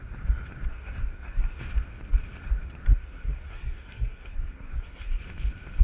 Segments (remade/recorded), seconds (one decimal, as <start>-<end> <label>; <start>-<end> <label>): 0.0-0.7 recorded; 0.7-1.6 remade; 1.6-2.9 recorded; 2.9-5.2 remade; 5.2-5.8 recorded